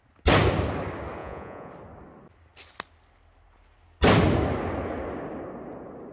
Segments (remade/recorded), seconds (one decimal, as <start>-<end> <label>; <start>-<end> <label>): 0.0-1.2 recorded; 1.2-1.7 remade; 1.7-6.1 recorded